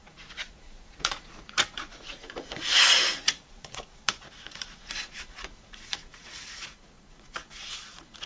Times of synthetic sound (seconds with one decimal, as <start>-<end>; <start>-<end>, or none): 0.0-8.3